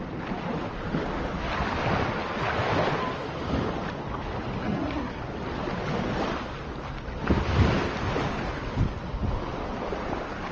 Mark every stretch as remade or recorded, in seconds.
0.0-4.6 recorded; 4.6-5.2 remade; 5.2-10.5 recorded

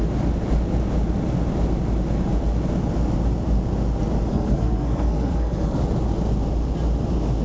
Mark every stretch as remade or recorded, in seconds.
0.0-4.3 recorded; 4.3-5.8 remade; 5.8-7.4 recorded

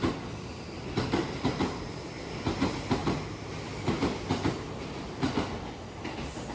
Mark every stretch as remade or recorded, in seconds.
0.0-6.5 recorded

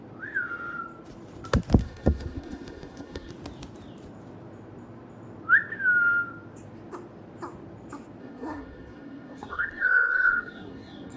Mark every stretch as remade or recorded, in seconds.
0.0-1.8 recorded; 1.8-3.3 remade; 3.3-8.2 recorded; 8.2-11.2 remade